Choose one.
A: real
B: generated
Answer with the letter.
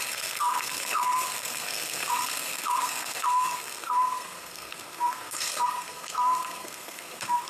B